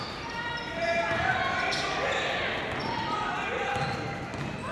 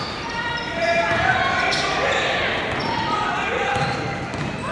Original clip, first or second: first